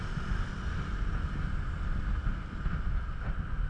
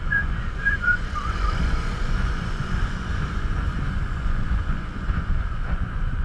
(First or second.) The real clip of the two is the first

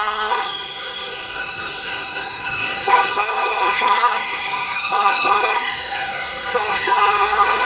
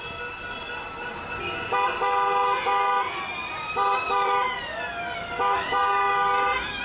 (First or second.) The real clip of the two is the second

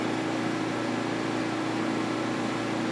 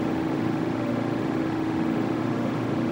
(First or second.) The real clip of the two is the first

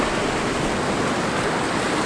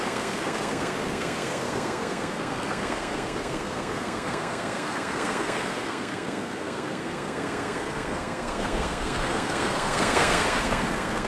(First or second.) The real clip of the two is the first